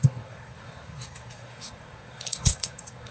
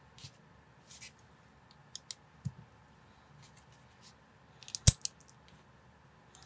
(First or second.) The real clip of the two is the second